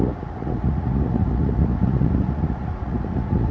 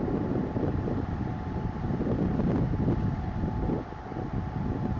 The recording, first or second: second